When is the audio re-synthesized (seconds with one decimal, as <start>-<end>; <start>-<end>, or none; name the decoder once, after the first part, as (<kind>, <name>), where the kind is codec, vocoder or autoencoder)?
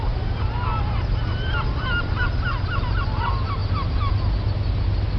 3.6-4.1 (vocoder, BigVGAN v2)